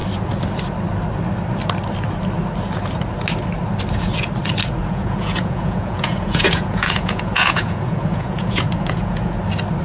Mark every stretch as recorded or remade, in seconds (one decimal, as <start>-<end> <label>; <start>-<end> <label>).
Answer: 0.0-4.8 recorded; 4.8-9.4 remade; 9.4-9.8 recorded